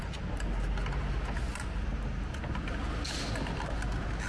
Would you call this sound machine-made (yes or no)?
no